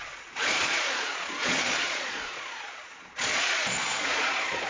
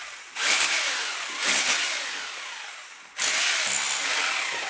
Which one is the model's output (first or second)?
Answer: first